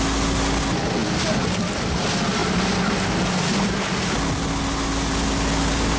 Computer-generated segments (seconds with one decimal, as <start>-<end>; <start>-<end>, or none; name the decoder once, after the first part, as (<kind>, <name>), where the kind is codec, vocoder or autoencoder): none